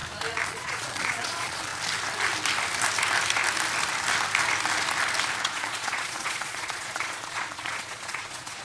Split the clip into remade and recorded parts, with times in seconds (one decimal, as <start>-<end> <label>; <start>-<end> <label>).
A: 0.0-0.5 recorded; 0.5-1.7 remade; 1.7-5.4 recorded; 5.4-8.6 remade